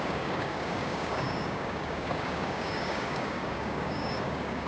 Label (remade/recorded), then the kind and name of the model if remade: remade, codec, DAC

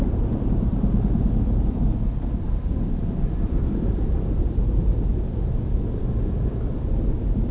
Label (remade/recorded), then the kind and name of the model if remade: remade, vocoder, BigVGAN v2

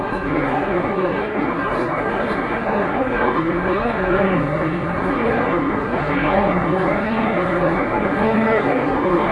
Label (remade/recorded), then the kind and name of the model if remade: remade, codec, SNAC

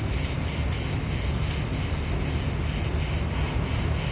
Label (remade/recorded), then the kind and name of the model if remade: recorded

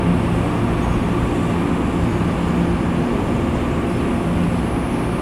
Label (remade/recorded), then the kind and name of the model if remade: recorded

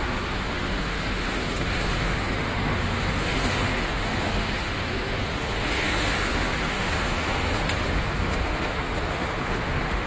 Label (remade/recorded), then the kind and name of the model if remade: remade, autoencoder, DAC-VAE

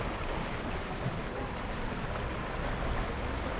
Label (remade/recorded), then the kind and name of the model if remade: recorded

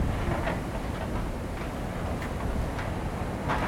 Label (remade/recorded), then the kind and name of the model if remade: recorded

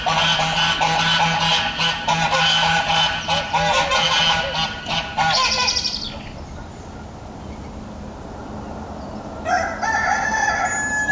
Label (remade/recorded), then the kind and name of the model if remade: recorded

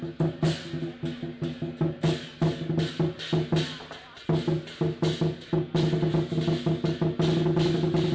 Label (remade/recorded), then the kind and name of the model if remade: recorded